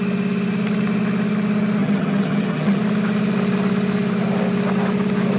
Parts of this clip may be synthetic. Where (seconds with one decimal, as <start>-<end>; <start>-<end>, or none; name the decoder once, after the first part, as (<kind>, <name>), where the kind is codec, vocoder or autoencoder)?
1.8-2.8 (vocoder, HiFi-GAN)